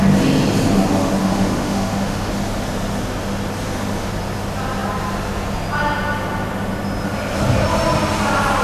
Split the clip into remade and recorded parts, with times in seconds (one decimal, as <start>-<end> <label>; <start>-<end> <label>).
0.0-1.2 recorded; 1.2-2.3 remade; 2.3-8.6 recorded